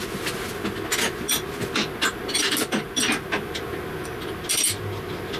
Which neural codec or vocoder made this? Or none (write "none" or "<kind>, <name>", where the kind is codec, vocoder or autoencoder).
none